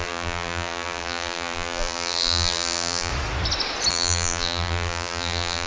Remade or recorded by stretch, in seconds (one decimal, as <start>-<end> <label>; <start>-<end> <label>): 0.0-3.1 remade; 3.1-3.9 recorded; 3.9-5.7 remade